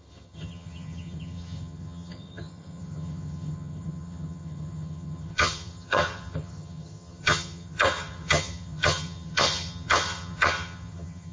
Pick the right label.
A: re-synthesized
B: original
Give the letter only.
A